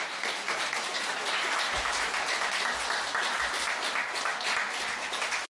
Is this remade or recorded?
recorded